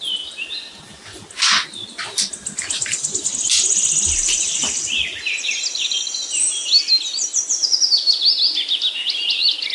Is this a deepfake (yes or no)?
no